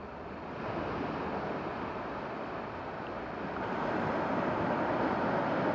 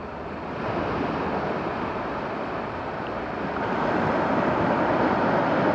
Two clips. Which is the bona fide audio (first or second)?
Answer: first